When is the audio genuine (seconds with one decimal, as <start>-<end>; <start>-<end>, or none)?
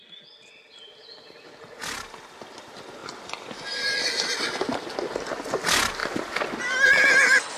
0.0-7.6